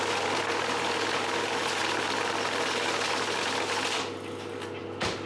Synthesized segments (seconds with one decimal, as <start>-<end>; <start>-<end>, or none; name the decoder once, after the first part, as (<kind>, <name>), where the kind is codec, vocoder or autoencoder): none